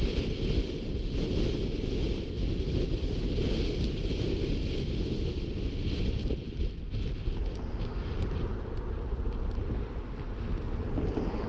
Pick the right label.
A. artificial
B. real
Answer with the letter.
B